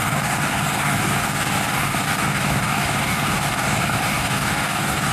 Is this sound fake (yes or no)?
yes